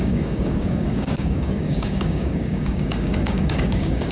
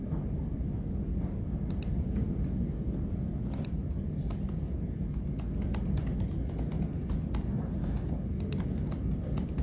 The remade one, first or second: first